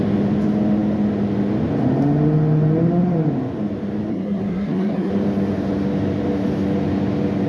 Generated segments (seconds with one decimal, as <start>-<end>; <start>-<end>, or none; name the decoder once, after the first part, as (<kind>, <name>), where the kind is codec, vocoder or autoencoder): 4.1-5.1 (codec, SNAC)